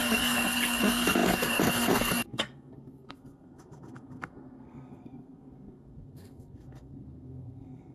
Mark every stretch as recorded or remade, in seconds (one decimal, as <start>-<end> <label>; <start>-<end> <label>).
0.0-7.9 remade